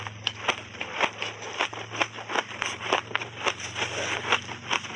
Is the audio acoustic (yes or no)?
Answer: yes